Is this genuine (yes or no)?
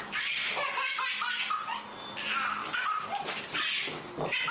yes